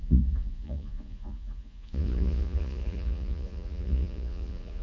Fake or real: fake